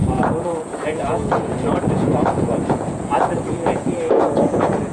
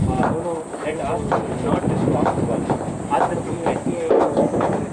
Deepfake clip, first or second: first